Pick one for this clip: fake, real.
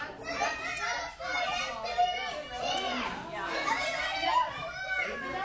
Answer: real